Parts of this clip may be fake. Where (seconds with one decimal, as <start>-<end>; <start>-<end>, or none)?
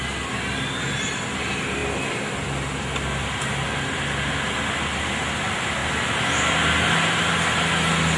none